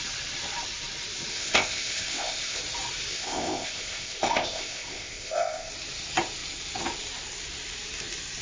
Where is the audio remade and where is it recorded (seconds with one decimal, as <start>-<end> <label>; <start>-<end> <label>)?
0.0-1.3 recorded; 1.3-2.6 remade; 2.6-3.1 recorded; 3.1-5.7 remade; 5.7-8.4 recorded